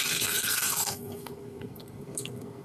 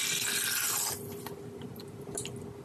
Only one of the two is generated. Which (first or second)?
first